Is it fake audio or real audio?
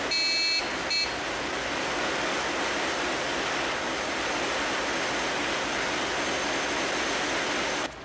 real